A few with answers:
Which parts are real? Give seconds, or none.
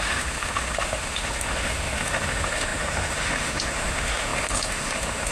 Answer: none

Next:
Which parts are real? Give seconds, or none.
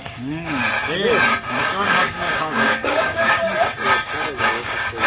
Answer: 0.6-1.6; 3.5-4.4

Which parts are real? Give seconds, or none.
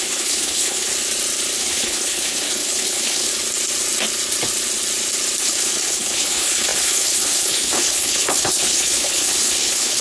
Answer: 0.9-1.6; 3.3-5.4